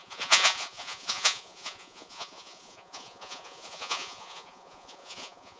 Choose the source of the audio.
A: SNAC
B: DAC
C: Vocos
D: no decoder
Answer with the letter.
C